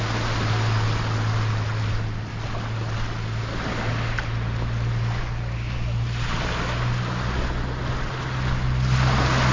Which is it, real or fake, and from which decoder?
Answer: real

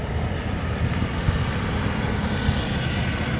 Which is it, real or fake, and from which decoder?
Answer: real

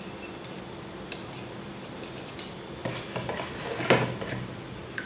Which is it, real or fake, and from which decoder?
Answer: real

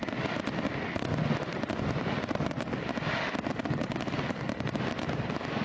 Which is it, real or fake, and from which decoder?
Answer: real